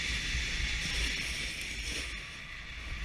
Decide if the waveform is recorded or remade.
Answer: recorded